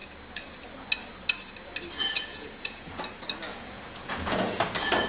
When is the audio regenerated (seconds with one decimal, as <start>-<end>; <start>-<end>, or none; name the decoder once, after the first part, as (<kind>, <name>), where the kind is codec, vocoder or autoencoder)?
2.3-3.0 (vocoder, Vocos); 3.5-4.6

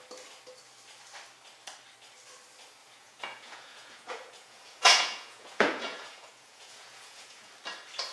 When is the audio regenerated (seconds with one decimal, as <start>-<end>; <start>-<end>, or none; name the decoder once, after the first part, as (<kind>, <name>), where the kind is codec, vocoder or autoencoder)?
2.8-7.5 (vocoder, Vocos)

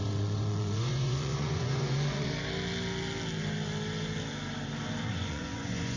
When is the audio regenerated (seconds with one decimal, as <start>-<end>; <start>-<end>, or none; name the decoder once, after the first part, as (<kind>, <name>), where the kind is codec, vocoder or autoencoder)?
0.0-2.3 (vocoder, Vocos); 5.1-6.0

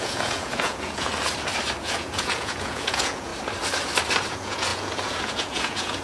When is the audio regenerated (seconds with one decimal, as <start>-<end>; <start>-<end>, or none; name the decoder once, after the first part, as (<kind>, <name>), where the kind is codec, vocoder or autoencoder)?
0.0-1.1 (vocoder, Vocos); 1.8-3.3; 4.3-6.0

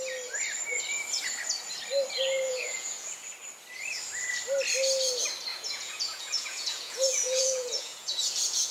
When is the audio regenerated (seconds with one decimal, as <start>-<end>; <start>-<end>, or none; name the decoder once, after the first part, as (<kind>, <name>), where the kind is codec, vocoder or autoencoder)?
2.5-3.3 (vocoder, Vocos); 5.5-8.7

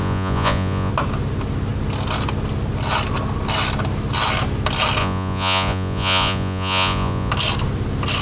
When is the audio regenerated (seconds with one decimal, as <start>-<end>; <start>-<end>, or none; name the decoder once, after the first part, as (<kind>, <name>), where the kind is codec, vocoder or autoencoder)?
0.0-0.9 (vocoder, Vocos); 5.0-7.3

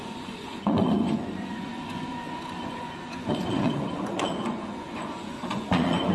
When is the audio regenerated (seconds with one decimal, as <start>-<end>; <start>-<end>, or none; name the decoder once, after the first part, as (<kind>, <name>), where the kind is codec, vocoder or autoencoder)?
0.0-6.1 (vocoder, Vocos)